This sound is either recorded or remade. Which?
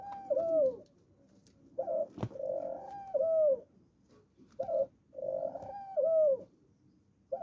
recorded